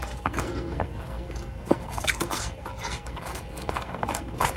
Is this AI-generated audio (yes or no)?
yes